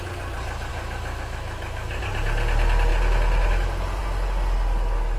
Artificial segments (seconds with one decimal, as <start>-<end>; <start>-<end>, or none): 0.7-2.0